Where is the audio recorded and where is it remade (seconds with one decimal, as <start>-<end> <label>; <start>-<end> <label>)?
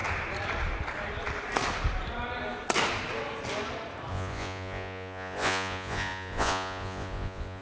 0.0-4.1 recorded; 4.1-7.6 remade